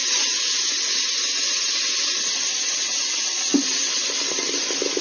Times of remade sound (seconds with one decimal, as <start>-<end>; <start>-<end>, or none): none